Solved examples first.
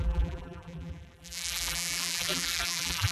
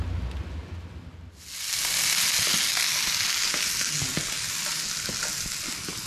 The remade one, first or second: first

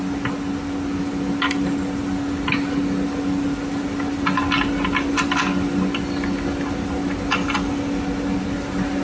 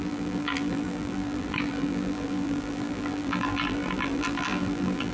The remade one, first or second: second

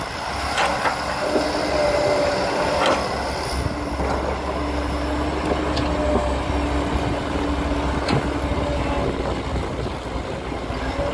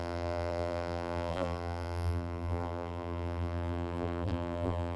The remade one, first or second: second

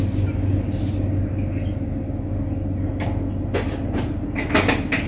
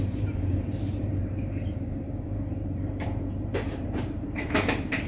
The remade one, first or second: second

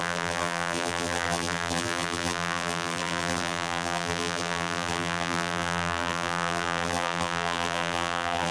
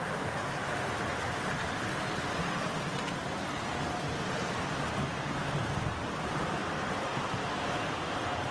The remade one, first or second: first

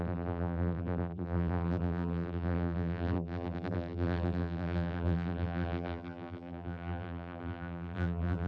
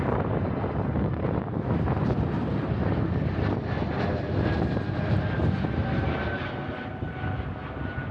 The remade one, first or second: first